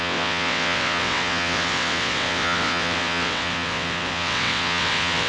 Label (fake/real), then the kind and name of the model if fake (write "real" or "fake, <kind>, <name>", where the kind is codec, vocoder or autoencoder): fake, vocoder, WaveNeXt